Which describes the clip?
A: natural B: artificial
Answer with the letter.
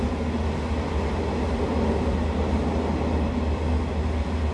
A